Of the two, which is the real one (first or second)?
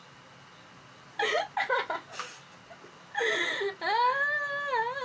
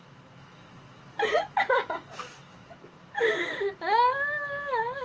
first